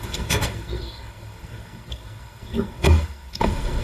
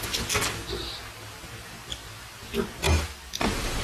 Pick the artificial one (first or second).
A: first